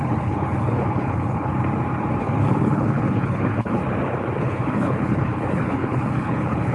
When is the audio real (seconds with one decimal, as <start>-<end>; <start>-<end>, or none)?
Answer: 1.5-2.2; 3.8-4.4